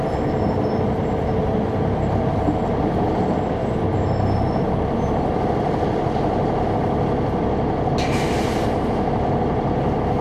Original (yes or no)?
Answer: yes